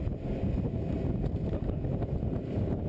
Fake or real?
real